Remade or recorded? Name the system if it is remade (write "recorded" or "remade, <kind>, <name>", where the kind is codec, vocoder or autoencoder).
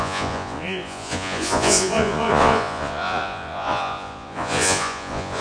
remade, vocoder, Vocos